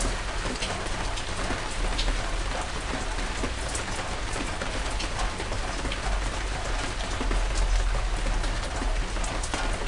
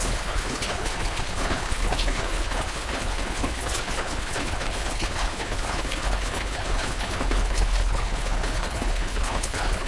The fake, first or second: second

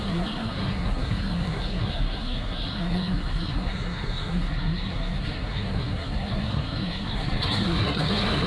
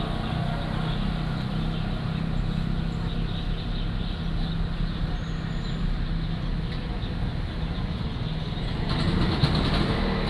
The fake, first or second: first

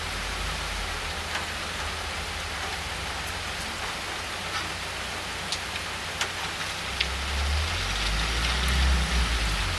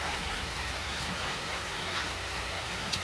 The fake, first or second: second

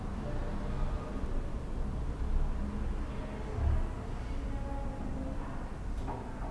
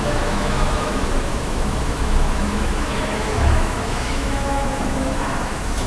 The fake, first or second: second